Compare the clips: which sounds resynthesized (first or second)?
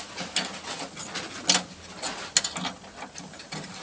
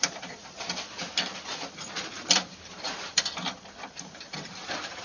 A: second